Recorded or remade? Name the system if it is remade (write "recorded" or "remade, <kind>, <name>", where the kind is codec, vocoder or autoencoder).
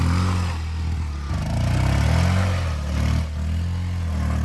recorded